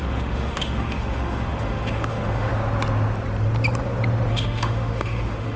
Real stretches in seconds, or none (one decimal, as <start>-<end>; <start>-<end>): 2.5-4.3